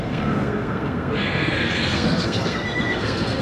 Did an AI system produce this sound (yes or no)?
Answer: yes